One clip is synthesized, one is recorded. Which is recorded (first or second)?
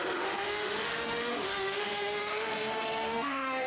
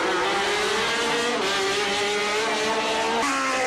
second